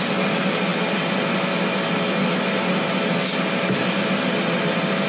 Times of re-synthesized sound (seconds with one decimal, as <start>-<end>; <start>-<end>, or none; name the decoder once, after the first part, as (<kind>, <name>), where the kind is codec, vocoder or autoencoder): none